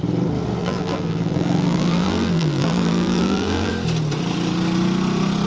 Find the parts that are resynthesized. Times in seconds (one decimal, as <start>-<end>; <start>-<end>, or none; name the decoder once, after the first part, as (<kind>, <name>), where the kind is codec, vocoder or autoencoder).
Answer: 0.6-3.7 (vocoder, BigVGAN v2)